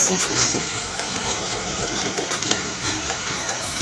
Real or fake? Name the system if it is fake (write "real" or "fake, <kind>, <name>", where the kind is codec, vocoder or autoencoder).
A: fake, codec, SNAC